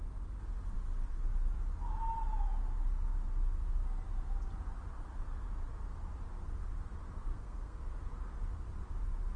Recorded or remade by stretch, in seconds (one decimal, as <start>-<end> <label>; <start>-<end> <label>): 0.0-7.3 recorded; 7.3-7.8 remade; 7.8-9.4 recorded